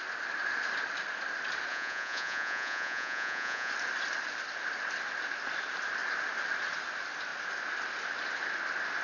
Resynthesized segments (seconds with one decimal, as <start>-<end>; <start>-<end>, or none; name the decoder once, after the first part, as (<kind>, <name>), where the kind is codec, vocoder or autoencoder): 1.7-3.7 (vocoder, Vocos)